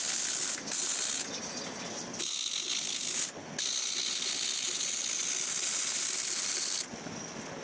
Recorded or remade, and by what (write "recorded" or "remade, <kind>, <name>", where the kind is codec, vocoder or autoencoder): recorded